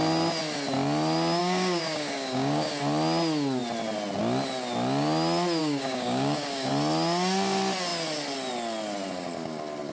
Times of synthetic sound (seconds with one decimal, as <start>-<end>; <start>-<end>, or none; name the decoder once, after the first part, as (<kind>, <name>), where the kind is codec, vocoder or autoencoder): 1.4-2.7 (codec, DAC); 5.6-6.7